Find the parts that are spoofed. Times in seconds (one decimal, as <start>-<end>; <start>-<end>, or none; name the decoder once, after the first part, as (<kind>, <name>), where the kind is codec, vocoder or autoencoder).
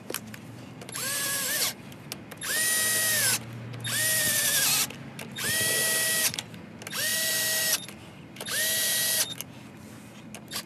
none